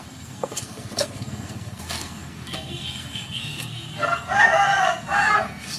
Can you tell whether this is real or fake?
fake